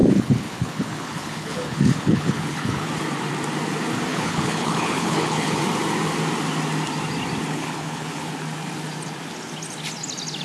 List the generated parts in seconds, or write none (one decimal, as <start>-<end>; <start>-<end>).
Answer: 0.0-2.9; 4.1-5.6; 7.5-8.3